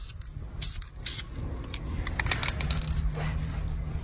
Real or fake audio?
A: real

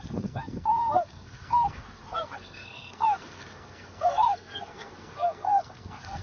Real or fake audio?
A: fake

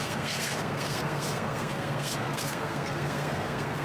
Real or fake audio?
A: fake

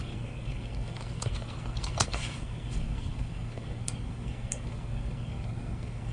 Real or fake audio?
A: fake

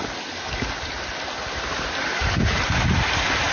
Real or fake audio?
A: real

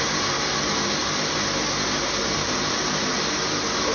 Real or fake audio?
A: real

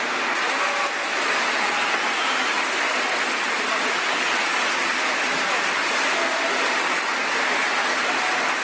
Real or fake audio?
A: real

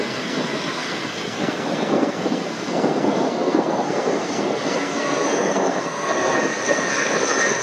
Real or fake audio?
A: fake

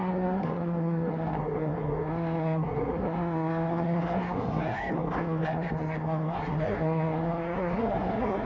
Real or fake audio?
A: fake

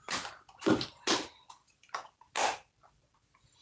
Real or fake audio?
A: real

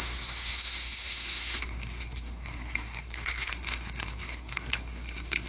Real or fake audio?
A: fake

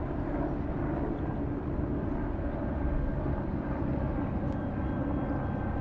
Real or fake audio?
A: real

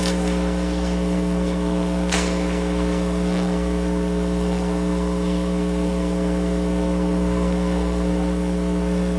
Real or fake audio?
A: fake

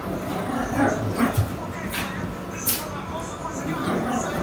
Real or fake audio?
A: real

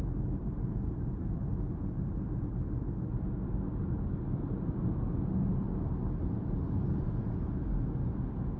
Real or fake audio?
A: real